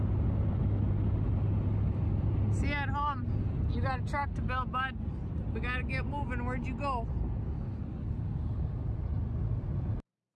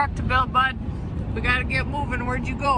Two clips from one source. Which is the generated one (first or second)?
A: second